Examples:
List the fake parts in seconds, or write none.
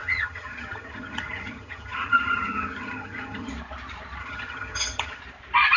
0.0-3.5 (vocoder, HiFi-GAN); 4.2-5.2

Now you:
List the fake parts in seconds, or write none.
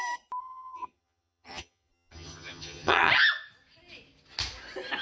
0.4-3.1 (vocoder, HiFi-GAN)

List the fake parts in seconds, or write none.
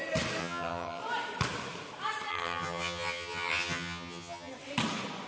0.4-1.0 (vocoder, HiFi-GAN); 2.3-4.5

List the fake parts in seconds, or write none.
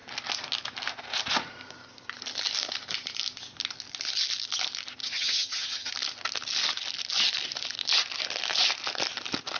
5.0-5.9 (vocoder, HiFi-GAN)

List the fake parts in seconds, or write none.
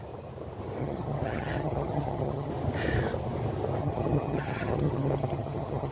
0.8-2.5 (vocoder, HiFi-GAN); 3.8-5.9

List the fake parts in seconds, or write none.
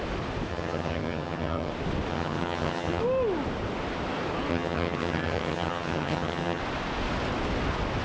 0.5-1.7 (vocoder, HiFi-GAN); 2.1-3.0; 4.5-6.6